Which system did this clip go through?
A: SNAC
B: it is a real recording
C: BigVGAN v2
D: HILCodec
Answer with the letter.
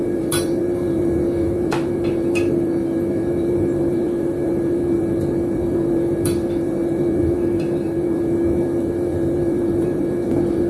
C